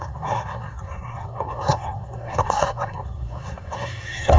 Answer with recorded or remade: remade